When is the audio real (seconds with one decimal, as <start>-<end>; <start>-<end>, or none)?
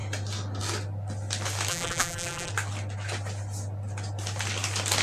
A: 0.0-1.7; 2.5-5.0